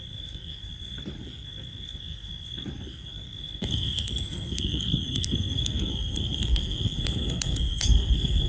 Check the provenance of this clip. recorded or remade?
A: remade